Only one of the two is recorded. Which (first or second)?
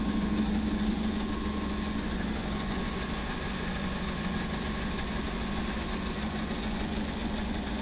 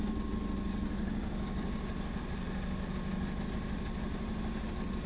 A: second